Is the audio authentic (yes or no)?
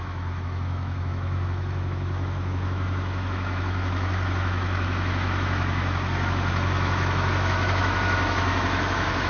no